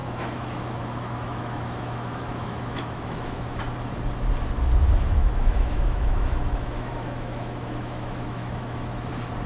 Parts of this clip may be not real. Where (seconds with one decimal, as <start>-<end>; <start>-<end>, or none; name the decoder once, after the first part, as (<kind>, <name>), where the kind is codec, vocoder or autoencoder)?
0.0-3.6 (autoencoder, DAC-VAE); 5.2-9.1